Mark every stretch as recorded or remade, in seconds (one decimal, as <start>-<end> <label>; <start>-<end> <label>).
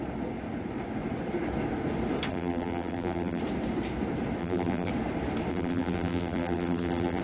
0.0-2.3 recorded; 2.3-3.4 remade; 3.4-4.4 recorded; 4.4-4.9 remade; 4.9-5.5 recorded; 5.5-7.2 remade